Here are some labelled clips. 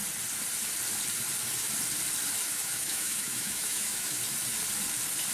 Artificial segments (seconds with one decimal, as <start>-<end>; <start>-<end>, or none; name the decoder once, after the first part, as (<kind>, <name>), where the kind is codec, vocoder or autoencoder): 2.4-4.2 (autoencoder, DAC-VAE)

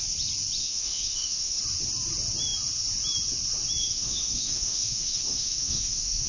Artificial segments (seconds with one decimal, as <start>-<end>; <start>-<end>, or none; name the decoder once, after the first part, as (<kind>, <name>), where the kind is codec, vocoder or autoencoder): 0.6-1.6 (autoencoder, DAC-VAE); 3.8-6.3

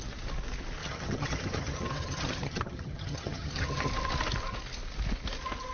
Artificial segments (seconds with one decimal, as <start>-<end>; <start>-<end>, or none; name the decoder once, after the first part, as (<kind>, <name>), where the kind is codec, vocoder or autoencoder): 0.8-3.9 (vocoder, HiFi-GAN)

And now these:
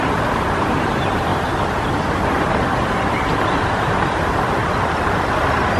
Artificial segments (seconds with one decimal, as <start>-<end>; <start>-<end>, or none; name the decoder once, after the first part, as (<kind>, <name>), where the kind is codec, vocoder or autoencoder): 0.0-1.3 (vocoder, BigVGAN v2); 3.7-4.6

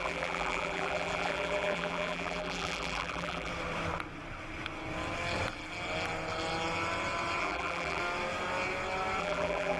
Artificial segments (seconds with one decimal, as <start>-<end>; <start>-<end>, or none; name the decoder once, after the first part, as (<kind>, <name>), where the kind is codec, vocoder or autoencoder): 0.0-3.5 (vocoder, BigVGAN v2); 7.4-8.0; 9.2-9.8

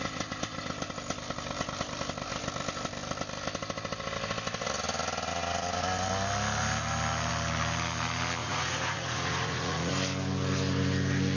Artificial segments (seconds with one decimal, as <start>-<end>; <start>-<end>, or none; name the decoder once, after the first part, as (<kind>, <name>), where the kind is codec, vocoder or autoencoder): 8.4-9.9 (vocoder, Vocos)